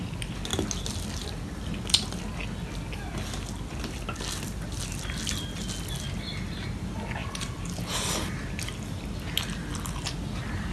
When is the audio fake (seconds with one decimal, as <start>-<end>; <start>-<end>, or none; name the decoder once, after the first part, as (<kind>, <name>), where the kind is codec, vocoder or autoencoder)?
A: none